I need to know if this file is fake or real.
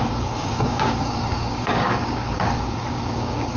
fake